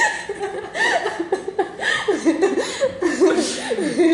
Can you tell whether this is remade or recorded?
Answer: recorded